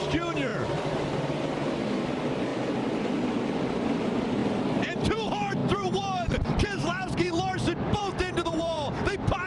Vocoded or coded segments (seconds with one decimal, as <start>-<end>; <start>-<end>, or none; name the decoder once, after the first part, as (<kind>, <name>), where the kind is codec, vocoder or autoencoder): 0.0-4.4 (vocoder, BigVGAN v2); 5.0-9.5